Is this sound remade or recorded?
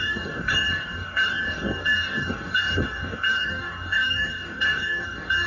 remade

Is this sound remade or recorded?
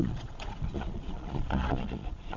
remade